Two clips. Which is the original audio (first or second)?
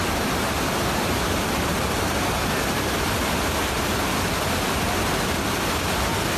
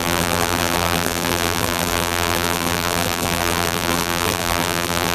first